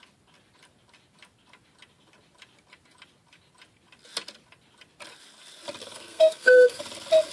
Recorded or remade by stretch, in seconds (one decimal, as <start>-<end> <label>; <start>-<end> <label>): 0.0-5.8 recorded; 5.8-6.8 remade; 6.8-7.3 recorded